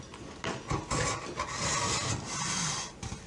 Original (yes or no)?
yes